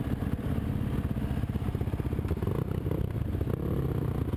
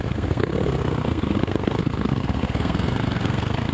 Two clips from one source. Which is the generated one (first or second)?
second